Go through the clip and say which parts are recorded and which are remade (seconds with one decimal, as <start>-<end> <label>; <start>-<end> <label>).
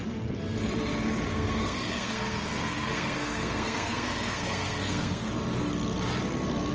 0.0-1.3 recorded; 1.3-5.3 remade; 5.3-6.7 recorded